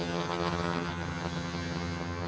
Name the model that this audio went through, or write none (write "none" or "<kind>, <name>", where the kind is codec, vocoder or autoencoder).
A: vocoder, HiFi-GAN